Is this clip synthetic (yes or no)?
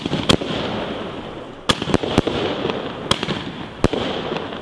no